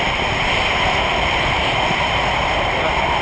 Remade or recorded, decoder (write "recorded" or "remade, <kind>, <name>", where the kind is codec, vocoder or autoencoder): recorded